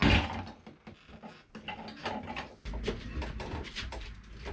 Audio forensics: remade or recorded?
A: recorded